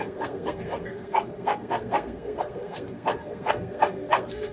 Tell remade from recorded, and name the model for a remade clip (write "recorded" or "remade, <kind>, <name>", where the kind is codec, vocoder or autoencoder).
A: remade, codec, SNAC